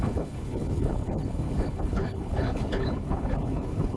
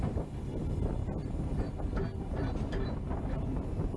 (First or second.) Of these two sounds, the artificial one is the first